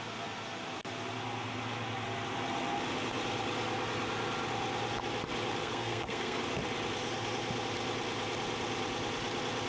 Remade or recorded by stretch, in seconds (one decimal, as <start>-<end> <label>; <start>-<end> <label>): 0.0-5.6 recorded; 5.6-6.4 remade; 6.4-9.7 recorded